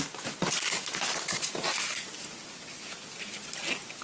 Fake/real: real